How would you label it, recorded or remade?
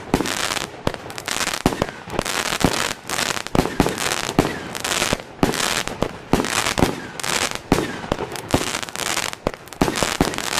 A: recorded